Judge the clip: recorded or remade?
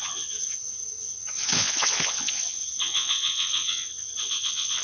remade